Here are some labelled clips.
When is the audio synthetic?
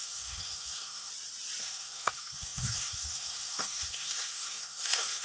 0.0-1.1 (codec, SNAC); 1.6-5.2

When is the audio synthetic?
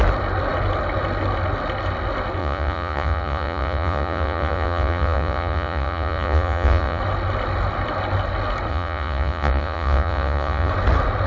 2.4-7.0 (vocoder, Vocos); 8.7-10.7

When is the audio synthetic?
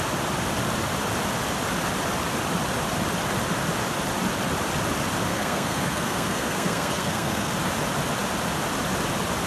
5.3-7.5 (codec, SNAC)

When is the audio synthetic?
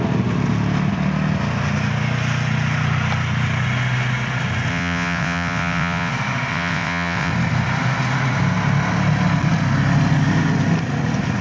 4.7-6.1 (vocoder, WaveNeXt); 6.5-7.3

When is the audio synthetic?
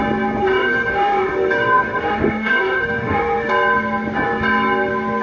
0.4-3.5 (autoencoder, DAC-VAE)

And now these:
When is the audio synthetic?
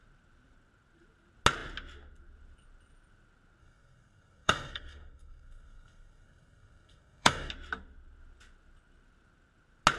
3.6-7.5 (codec, SNAC)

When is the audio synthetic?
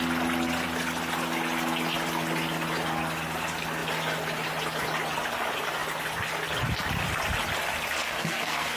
8.0-8.8 (codec, SNAC)